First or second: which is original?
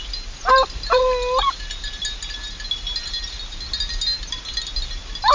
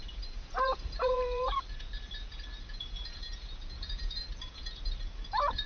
first